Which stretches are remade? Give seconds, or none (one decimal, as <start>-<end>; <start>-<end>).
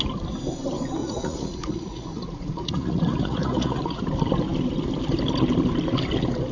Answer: 1.0-4.0